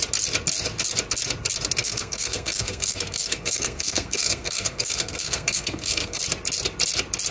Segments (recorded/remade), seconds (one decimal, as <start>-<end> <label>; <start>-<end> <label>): 0.0-1.8 recorded; 1.8-6.2 remade; 6.2-7.3 recorded